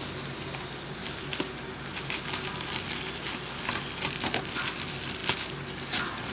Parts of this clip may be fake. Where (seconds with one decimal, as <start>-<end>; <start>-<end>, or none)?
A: none